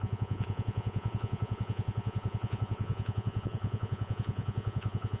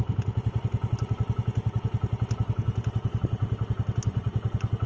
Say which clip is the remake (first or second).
first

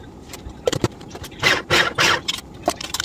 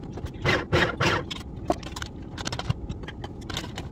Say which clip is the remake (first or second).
first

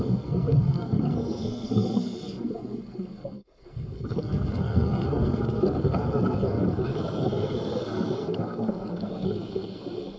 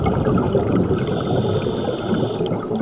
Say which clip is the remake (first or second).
first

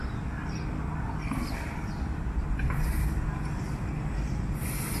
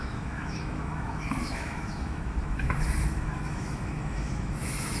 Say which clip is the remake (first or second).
second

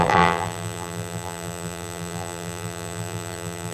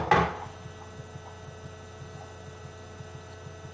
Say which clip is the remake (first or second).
first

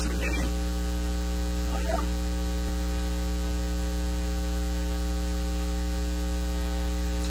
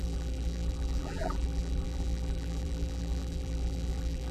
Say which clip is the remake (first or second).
second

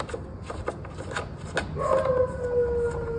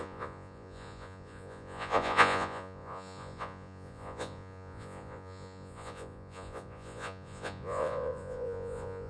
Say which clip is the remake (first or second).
second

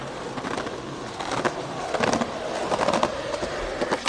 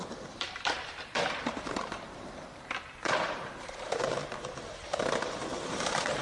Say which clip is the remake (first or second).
second